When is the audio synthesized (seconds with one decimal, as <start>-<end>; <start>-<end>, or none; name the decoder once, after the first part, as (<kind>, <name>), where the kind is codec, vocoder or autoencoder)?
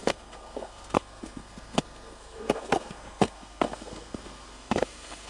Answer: 0.0-5.3 (codec, SNAC)